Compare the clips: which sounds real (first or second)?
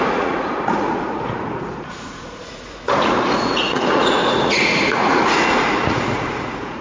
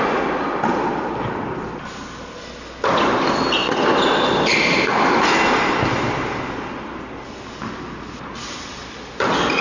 second